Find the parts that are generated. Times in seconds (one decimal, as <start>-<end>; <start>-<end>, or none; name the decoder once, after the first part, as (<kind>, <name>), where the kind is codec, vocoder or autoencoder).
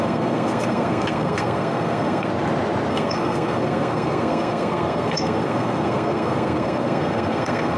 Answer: 0.0-2.3 (codec, SNAC); 2.9-7.8